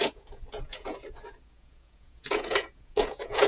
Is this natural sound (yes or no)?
no